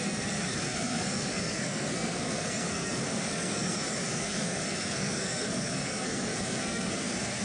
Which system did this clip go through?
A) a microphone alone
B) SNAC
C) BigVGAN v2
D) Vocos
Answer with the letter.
B